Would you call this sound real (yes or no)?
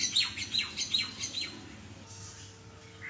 yes